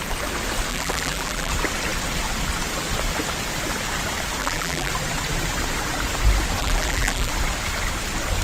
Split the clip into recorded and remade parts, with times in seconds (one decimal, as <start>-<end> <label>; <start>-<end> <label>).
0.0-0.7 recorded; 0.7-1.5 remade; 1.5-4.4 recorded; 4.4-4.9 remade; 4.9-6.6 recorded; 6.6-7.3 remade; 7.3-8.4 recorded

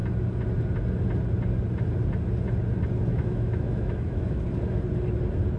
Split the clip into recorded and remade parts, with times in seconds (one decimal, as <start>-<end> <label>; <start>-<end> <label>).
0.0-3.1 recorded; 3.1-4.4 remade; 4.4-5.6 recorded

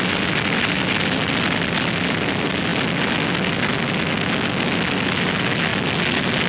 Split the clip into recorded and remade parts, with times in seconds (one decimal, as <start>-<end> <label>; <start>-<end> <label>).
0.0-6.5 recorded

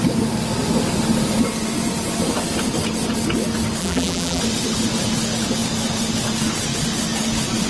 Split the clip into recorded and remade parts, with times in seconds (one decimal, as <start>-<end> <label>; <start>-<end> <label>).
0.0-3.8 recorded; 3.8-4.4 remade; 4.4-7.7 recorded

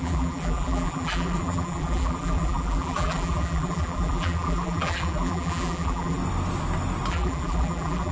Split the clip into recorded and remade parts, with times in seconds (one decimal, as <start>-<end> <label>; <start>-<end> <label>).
0.0-6.2 remade; 6.2-7.1 recorded; 7.1-8.1 remade

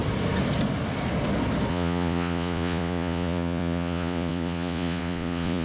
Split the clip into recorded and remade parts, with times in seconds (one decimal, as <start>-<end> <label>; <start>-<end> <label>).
0.0-1.7 recorded; 1.7-5.6 remade